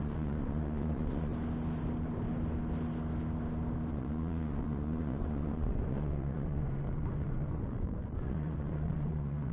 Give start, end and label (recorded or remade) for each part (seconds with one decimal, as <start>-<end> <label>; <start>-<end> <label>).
0.0-1.3 remade; 1.3-3.9 recorded; 3.9-9.5 remade

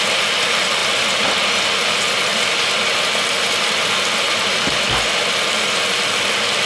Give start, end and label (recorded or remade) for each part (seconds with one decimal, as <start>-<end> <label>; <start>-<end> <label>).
0.0-6.7 recorded